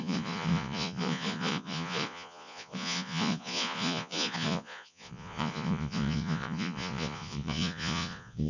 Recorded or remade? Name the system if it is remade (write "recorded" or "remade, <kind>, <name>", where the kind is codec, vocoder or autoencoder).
remade, vocoder, Vocos